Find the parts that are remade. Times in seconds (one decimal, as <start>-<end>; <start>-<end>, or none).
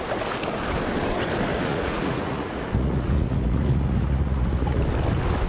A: 1.5-4.8